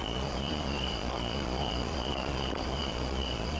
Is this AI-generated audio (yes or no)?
yes